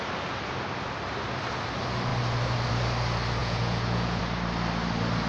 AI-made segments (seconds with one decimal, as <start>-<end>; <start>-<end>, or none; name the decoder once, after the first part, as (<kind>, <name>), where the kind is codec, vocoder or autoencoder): 3.4-4.2 (vocoder, Vocos)